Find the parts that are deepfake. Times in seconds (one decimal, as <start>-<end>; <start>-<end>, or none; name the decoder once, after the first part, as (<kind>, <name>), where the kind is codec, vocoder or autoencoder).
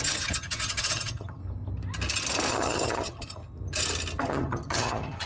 0.0-1.4 (vocoder, HiFi-GAN); 2.5-3.4; 4.2-5.3